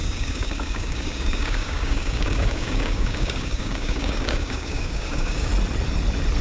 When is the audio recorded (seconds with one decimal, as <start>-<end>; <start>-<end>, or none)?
5.5-6.4